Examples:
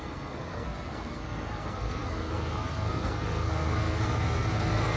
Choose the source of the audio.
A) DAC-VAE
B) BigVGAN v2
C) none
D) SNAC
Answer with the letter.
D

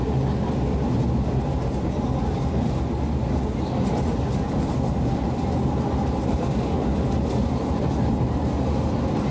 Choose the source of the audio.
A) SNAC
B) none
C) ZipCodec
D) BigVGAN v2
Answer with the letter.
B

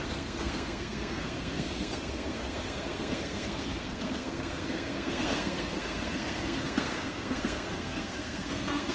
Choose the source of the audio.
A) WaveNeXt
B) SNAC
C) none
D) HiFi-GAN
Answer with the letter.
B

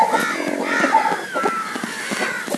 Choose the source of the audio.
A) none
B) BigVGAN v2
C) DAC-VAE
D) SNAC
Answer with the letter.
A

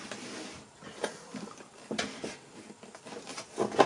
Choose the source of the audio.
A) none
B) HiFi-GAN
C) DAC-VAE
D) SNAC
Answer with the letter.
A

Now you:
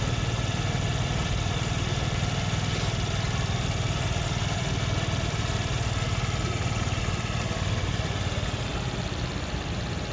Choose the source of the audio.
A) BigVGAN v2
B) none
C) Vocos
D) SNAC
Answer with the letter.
B